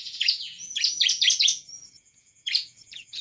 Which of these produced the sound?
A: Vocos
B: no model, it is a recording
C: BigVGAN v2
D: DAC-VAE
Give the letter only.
A